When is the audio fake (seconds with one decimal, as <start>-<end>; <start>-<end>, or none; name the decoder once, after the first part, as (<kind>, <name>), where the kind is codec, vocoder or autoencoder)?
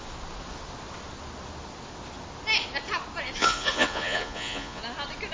3.4-4.8 (vocoder, Vocos)